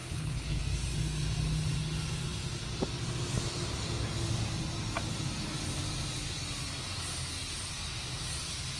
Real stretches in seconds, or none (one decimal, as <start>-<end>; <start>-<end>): 0.6-8.8